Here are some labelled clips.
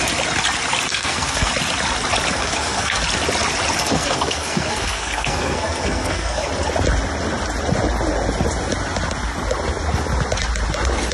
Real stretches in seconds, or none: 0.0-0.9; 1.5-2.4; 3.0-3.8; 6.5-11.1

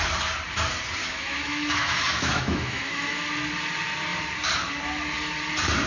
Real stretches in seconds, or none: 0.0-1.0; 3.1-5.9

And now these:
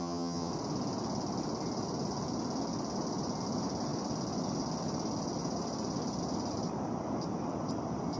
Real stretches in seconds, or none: 0.5-8.2

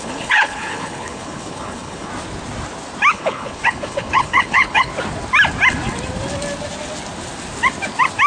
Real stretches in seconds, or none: 2.1-3.1; 4.9-8.3

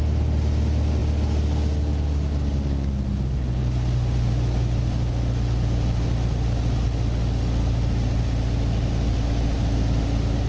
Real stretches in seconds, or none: 0.0-10.5

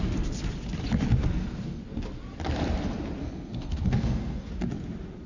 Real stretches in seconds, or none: 0.0-1.2; 1.8-3.2; 4.5-5.3

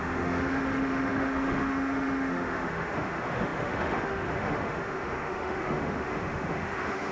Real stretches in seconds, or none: none

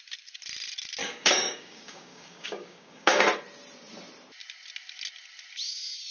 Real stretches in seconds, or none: 0.0-1.0; 3.2-6.1